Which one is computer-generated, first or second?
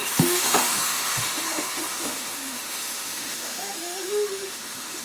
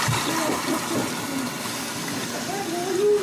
first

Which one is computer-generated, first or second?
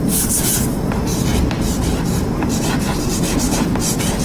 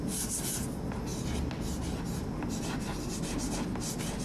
first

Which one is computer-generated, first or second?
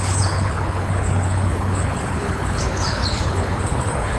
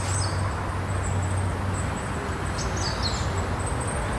first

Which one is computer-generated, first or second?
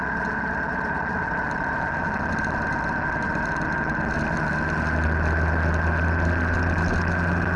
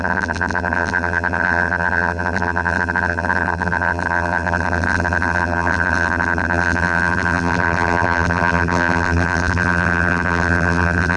second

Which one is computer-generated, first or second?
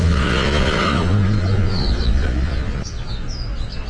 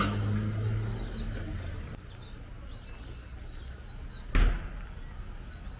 first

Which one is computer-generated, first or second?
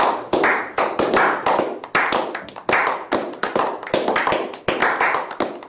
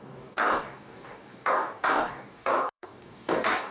second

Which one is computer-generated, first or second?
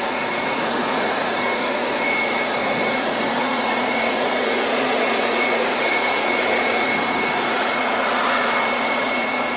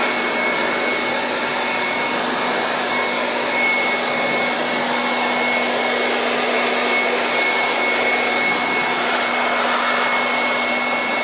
first